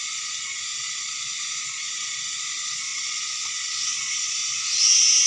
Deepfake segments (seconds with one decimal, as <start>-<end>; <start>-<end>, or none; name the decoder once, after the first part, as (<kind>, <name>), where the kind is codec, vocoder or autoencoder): 0.0-4.4 (vocoder, Vocos)